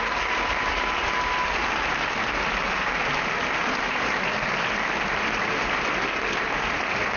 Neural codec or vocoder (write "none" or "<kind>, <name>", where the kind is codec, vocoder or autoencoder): vocoder, BigVGAN v2